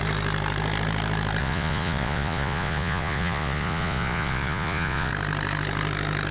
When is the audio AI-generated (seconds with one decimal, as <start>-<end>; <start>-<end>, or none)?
1.4-5.1